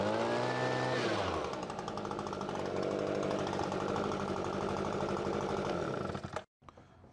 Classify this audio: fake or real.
real